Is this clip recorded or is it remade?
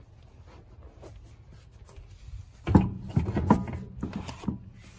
recorded